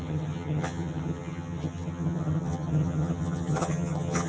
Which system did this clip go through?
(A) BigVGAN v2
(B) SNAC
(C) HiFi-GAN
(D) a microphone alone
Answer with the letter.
C